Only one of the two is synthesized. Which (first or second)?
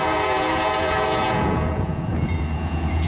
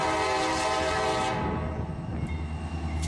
first